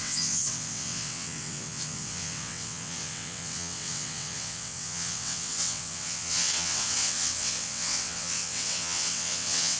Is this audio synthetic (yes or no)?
yes